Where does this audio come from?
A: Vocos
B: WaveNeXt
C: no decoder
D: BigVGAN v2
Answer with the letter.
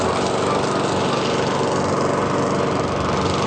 C